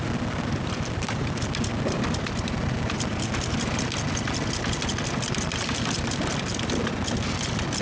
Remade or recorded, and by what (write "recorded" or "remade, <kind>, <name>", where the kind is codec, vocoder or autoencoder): recorded